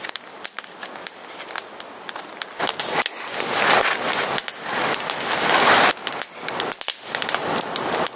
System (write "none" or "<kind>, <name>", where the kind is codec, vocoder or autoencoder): none